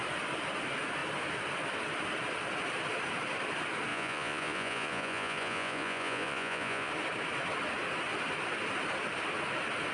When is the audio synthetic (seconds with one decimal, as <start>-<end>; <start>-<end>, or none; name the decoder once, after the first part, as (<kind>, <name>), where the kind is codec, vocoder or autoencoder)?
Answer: 3.9-6.9 (vocoder, Vocos)